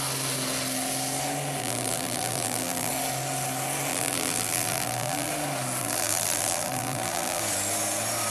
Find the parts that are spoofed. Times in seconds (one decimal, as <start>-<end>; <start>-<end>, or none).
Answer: 1.6-2.9; 3.9-5.3; 5.8-7.4

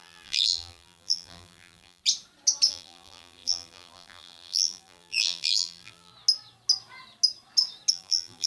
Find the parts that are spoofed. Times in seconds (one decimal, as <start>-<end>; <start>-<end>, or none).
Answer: 0.0-2.0; 2.7-6.1; 7.9-8.5

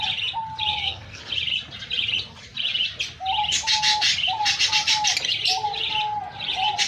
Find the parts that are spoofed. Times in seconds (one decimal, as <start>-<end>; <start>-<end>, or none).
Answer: 0.7-1.2

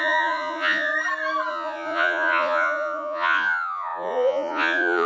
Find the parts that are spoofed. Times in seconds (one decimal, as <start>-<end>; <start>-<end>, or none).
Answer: 0.0-0.9; 1.5-5.1

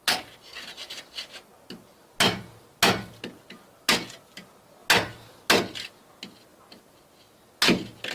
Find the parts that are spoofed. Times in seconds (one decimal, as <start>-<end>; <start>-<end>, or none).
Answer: none